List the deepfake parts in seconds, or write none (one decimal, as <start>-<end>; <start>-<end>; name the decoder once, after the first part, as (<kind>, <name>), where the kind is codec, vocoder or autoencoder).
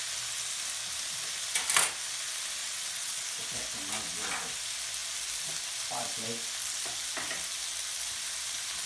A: 2.6-3.2 (vocoder, WaveNeXt)